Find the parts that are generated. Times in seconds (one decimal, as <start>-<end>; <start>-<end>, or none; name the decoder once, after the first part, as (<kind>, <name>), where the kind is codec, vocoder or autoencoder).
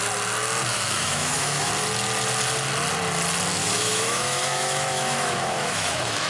0.7-1.7 (autoencoder, DAC-VAE); 3.6-6.3